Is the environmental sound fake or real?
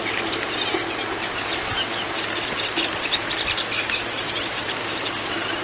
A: real